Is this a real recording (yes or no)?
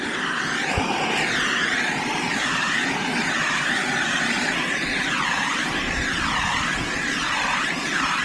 no